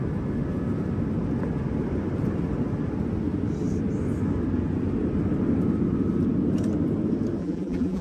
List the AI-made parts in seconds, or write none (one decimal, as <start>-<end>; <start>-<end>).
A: 7.4-8.0